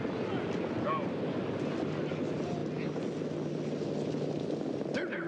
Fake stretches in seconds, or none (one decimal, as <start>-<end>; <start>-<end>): none

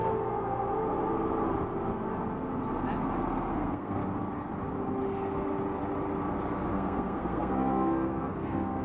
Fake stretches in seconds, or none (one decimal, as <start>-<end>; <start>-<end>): 3.5-4.0; 6.7-8.8

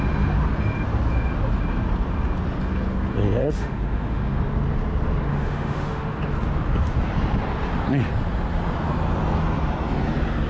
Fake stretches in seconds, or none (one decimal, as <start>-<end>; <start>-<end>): 3.4-4.4; 5.3-6.2

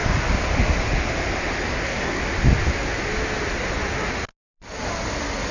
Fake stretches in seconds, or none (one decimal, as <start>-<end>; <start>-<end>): 1.7-2.2

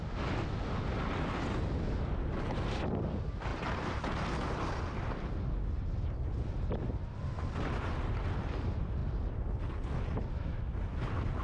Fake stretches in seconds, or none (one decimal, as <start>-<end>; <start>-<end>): none